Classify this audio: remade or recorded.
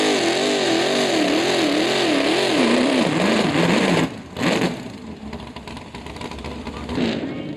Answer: recorded